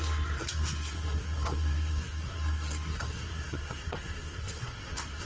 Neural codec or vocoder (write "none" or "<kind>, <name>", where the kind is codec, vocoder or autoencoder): codec, SNAC